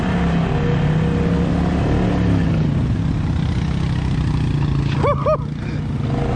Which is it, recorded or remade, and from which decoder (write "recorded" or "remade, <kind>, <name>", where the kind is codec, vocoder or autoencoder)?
recorded